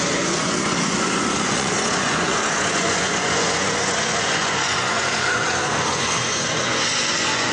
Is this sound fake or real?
fake